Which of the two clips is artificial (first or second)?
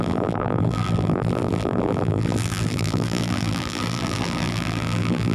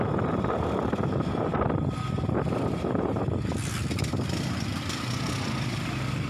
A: first